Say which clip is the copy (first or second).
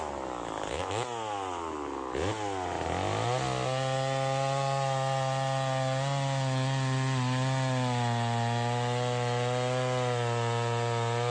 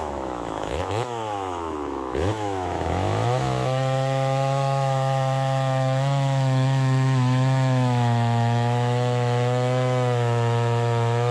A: second